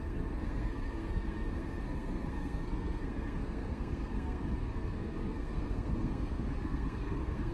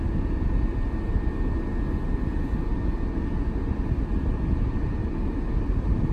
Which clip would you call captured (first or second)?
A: second